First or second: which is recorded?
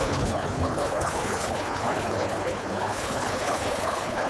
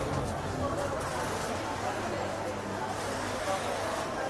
second